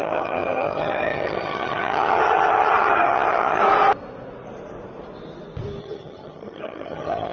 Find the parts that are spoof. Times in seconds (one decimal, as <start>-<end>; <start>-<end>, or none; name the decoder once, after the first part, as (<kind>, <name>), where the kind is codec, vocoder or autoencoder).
0.0-3.6 (vocoder, HiFi-GAN); 5.8-7.3

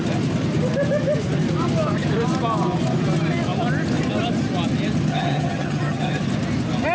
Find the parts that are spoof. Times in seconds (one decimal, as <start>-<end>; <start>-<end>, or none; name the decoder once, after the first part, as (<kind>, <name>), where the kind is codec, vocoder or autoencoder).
5.1-6.2 (vocoder, HiFi-GAN)